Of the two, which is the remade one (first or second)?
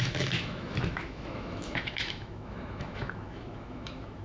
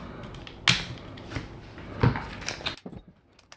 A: first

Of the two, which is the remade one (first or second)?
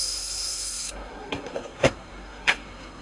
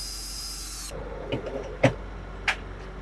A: first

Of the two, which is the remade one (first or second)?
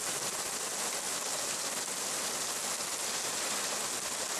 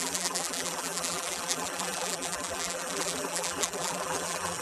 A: second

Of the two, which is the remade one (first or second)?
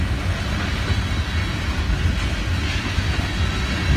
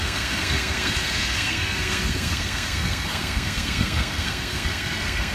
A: second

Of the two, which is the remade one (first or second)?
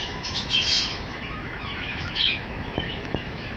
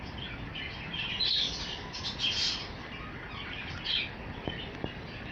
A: first